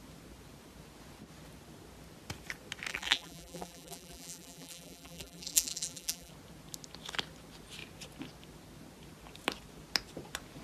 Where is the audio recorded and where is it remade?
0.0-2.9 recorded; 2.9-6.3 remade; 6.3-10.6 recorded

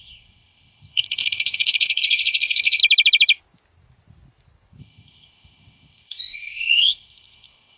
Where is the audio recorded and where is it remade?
0.0-2.8 remade; 2.8-4.8 recorded; 4.8-7.8 remade